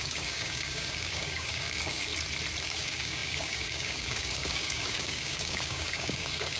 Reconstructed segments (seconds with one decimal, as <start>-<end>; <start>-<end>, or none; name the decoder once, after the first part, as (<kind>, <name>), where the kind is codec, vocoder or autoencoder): 0.0-2.1 (codec, DAC); 2.6-6.6